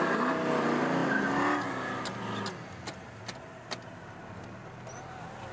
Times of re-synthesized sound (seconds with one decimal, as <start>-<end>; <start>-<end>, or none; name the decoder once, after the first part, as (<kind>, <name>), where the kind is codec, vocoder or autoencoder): none